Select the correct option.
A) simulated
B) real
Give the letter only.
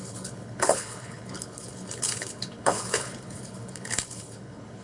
A